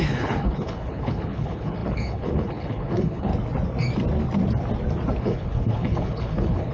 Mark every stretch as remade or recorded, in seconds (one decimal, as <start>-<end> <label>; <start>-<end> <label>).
0.0-3.3 remade; 3.3-5.2 recorded; 5.2-6.7 remade